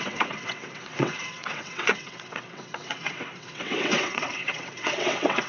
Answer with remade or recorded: remade